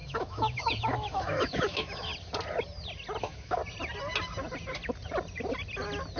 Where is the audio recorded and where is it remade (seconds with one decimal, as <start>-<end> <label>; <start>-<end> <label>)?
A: 0.0-2.1 remade; 2.1-3.2 recorded; 3.2-3.6 remade; 3.6-6.2 recorded